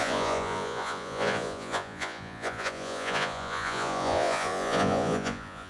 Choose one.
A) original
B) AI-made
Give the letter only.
B